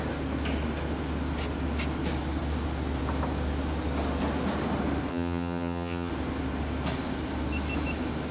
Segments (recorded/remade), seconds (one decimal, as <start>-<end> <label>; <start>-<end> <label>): 0.0-5.1 recorded; 5.1-6.1 remade; 6.1-8.3 recorded

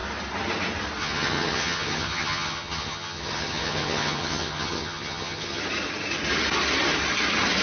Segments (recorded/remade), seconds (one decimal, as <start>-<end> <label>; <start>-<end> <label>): 0.0-1.0 recorded; 1.0-5.6 remade; 5.6-7.6 recorded

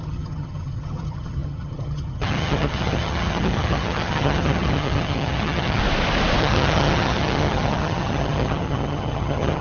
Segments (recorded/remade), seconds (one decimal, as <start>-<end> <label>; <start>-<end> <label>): 0.0-5.8 remade; 5.8-6.4 recorded; 6.4-9.6 remade

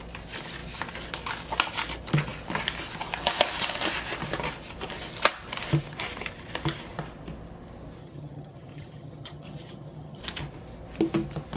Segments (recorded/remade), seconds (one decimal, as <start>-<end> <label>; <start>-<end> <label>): 0.0-8.0 recorded; 8.0-10.2 remade; 10.2-11.6 recorded

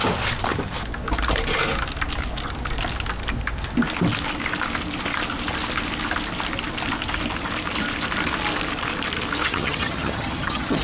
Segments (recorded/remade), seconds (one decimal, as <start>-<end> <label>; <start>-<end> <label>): 0.0-9.4 recorded; 9.4-10.8 remade

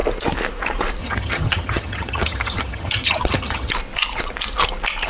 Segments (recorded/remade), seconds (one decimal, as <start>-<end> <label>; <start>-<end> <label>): 0.0-1.0 recorded; 1.0-3.7 remade; 3.7-5.1 recorded